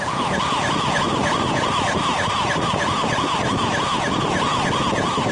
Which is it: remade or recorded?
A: recorded